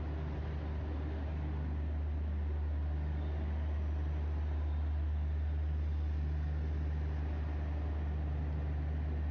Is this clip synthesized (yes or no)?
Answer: no